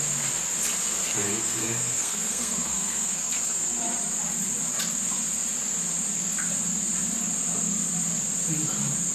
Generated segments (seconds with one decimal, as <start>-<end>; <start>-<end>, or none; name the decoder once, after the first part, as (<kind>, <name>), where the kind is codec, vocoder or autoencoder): 1.0-3.8 (codec, SNAC)